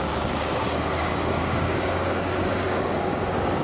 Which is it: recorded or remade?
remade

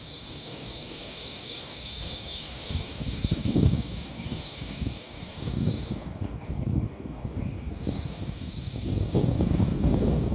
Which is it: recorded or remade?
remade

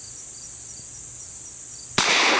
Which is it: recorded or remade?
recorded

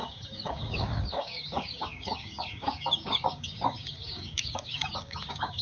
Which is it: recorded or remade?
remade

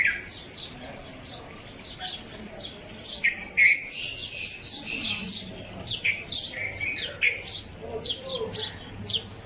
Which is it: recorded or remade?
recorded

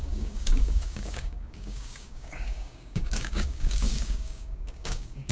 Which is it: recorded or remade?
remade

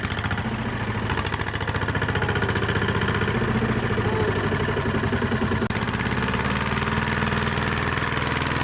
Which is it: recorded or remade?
recorded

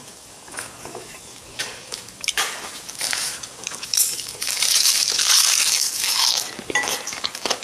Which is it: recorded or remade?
remade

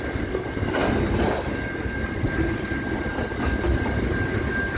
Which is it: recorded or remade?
recorded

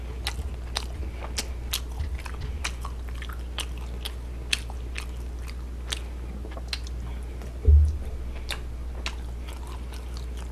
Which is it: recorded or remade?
recorded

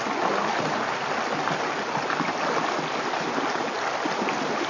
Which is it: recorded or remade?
recorded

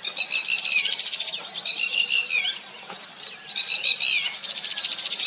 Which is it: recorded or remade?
recorded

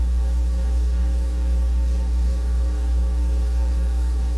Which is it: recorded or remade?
remade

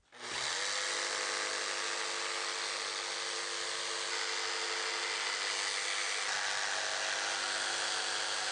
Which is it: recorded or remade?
recorded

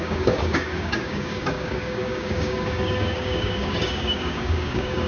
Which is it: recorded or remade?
remade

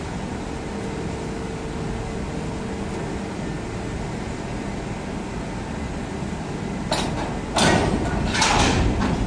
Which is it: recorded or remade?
recorded